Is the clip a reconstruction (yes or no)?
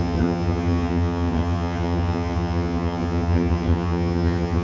yes